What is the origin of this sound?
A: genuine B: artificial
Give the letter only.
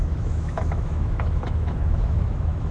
B